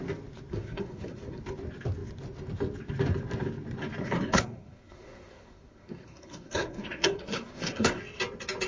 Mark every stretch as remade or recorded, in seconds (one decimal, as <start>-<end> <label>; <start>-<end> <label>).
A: 0.0-0.5 recorded; 0.5-1.4 remade; 1.4-4.0 recorded; 4.0-8.0 remade; 8.0-8.7 recorded